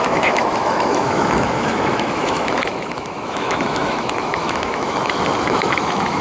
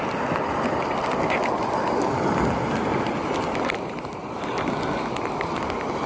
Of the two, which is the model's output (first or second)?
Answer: first